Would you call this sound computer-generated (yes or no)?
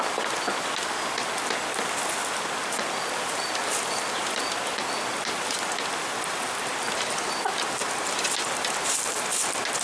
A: no